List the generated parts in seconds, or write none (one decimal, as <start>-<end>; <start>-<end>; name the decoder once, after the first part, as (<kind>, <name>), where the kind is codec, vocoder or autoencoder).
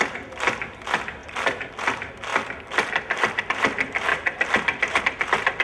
1.2-1.7 (vocoder, BigVGAN v2); 2.3-3.4; 4.1-5.0